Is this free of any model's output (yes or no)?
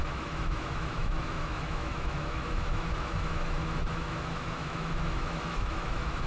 no